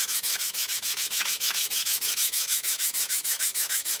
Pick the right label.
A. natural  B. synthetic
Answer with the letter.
B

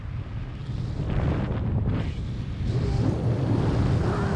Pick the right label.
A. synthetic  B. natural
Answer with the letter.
B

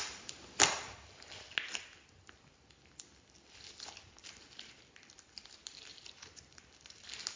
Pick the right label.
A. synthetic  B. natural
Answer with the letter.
B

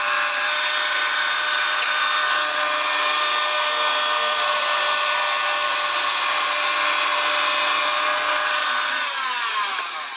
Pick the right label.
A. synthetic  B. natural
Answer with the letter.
B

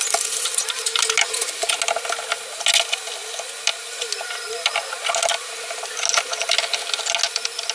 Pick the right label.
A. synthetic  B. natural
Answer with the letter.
B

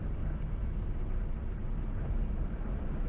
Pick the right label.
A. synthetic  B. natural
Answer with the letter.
B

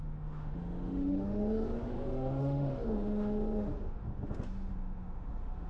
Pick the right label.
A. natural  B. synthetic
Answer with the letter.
B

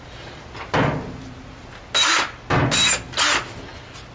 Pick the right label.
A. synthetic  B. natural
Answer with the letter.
B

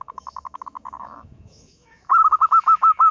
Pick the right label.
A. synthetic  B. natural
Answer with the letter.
A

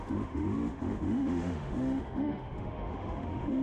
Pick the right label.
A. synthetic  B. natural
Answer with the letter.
A